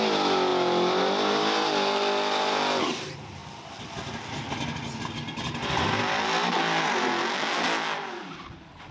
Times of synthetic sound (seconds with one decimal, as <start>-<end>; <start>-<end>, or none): none